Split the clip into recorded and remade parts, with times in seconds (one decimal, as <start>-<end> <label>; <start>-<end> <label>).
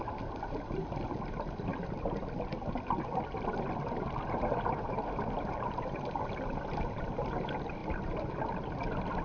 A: 0.0-9.2 recorded